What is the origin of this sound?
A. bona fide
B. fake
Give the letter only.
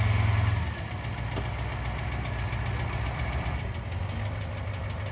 A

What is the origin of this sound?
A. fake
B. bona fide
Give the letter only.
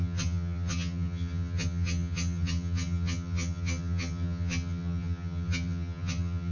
A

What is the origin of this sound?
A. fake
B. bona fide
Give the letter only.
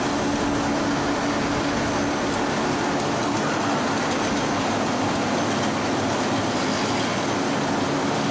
B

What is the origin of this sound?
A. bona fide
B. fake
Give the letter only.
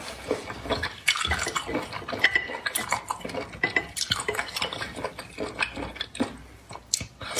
A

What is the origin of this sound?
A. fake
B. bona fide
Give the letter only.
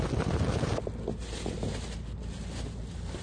B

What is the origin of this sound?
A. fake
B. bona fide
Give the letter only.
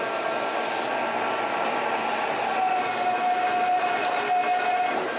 B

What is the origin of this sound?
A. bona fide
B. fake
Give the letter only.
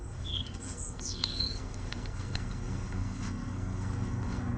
B